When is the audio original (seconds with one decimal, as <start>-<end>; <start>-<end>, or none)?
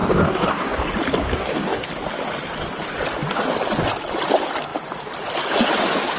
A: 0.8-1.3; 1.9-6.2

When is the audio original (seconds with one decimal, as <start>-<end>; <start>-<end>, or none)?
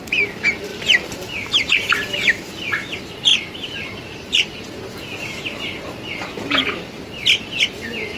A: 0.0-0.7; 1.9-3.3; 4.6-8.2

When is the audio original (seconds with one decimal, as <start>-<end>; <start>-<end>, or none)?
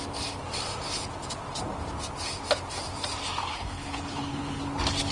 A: 0.0-3.5; 4.6-5.1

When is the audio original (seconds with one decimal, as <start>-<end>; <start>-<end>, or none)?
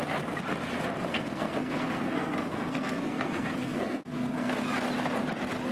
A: 0.0-1.1; 4.5-5.7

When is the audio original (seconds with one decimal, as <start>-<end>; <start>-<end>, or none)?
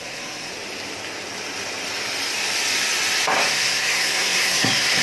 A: 0.5-3.5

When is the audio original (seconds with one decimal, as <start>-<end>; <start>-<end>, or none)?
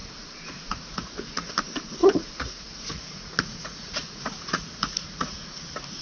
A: 1.5-2.0; 5.6-6.0